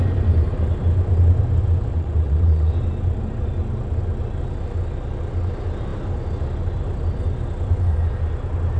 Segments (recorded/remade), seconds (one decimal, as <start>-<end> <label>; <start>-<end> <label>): 0.0-1.9 recorded; 1.9-2.7 remade; 2.7-8.8 recorded

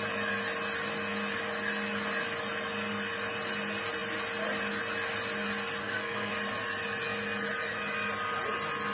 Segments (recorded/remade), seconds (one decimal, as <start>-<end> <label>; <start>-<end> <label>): 0.0-5.8 recorded; 5.8-6.3 remade; 6.3-8.9 recorded